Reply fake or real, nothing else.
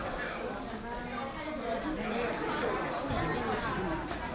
real